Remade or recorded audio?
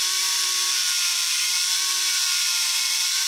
remade